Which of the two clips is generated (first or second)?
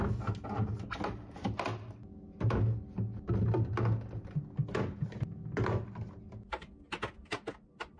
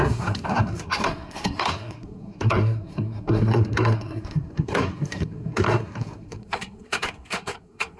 second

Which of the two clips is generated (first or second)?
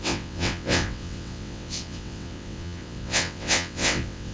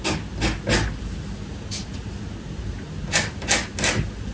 first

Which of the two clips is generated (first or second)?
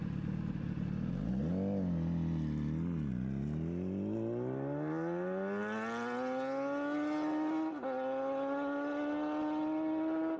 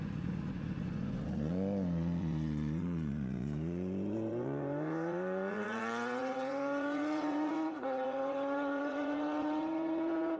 second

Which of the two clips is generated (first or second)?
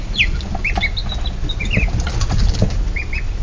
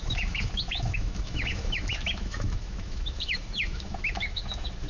second